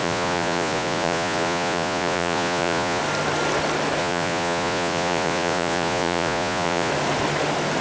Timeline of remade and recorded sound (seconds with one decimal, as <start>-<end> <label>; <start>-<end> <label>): 0.0-3.0 remade; 3.0-4.0 recorded; 4.0-6.9 remade; 6.9-7.8 recorded